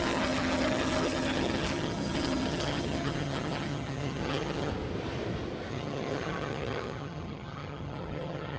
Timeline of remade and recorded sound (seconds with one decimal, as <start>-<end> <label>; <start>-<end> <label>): 0.0-4.7 remade; 4.7-5.7 recorded; 5.7-8.6 remade